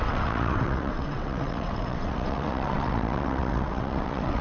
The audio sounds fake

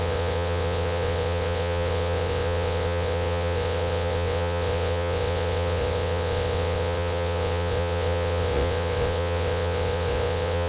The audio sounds fake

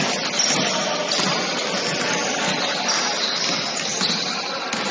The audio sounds real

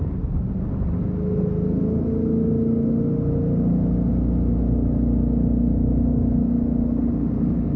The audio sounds real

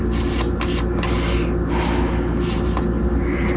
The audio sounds real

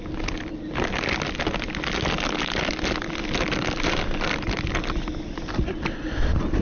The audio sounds real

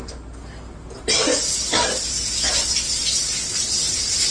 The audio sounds real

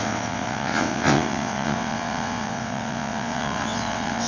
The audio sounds fake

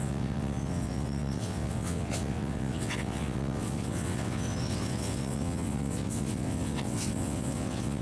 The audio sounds fake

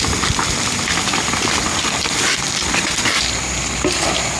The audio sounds real